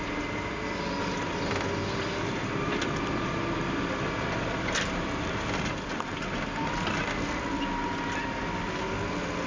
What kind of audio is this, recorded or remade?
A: recorded